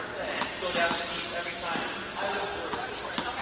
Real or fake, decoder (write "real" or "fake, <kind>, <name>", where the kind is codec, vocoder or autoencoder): real